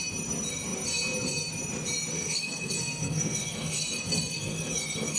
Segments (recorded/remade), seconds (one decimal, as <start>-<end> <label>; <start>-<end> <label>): 0.0-2.1 recorded; 2.1-5.2 remade